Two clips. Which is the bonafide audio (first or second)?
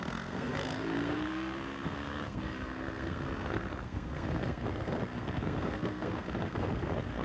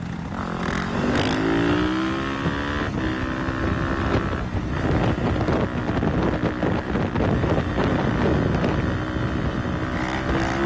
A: second